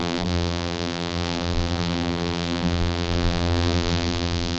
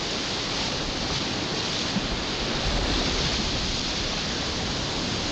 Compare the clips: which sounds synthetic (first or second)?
first